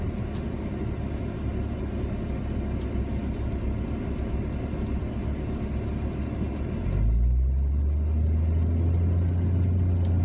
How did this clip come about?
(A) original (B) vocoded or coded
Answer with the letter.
A